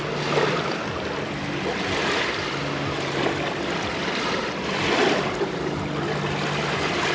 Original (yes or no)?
yes